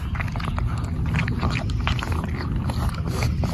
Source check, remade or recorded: recorded